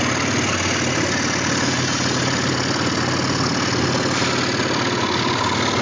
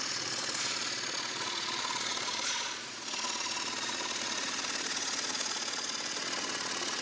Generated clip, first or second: second